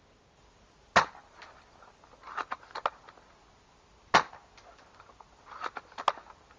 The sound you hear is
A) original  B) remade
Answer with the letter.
A